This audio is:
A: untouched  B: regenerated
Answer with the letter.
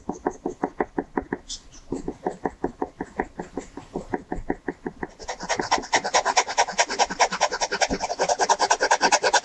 A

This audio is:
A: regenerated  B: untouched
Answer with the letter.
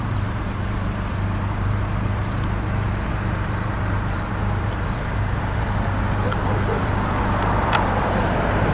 A